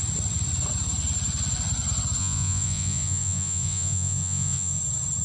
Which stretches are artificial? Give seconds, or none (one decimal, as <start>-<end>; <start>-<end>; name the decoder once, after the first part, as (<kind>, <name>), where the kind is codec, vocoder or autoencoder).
2.2-4.8 (vocoder, Vocos)